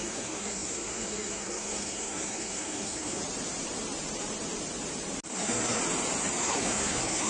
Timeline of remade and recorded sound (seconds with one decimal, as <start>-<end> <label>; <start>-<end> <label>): 0.0-3.2 remade; 3.2-5.3 recorded; 5.3-5.8 remade; 5.8-6.4 recorded; 6.4-7.3 remade